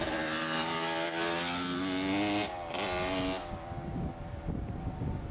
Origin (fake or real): real